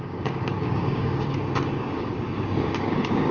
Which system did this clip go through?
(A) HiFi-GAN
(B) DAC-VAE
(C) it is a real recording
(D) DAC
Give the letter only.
D